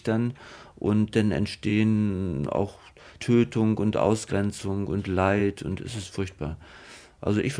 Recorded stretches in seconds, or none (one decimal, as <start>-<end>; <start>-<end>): 0.0-7.6